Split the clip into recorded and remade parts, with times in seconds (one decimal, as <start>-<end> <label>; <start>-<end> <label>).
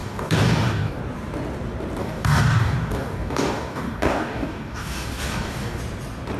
0.0-1.0 remade; 1.0-2.0 recorded; 2.0-5.8 remade; 5.8-6.4 recorded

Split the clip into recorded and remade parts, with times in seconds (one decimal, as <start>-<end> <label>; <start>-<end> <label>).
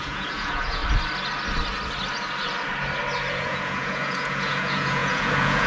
0.0-0.8 remade; 0.8-3.3 recorded; 3.3-5.7 remade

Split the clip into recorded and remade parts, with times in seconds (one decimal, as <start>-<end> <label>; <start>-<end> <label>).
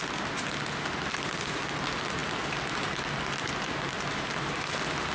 0.0-5.1 recorded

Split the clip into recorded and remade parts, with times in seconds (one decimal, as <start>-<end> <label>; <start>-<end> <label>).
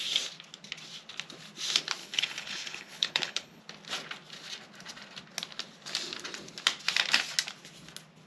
0.0-2.0 recorded; 2.0-3.6 remade; 3.6-8.3 recorded